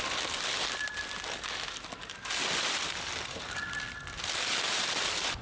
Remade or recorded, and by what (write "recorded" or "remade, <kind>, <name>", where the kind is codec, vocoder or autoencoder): recorded